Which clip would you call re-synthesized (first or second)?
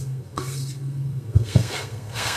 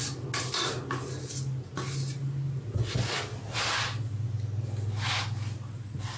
first